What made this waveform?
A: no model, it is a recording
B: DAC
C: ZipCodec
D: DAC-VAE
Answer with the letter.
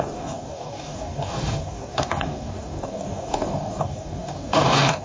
B